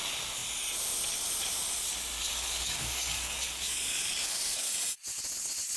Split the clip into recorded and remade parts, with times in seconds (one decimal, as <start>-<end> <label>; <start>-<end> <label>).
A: 0.0-2.3 recorded; 2.3-4.7 remade; 4.7-5.8 recorded